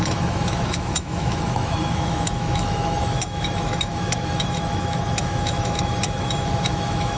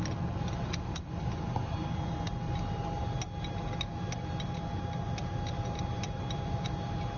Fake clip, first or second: first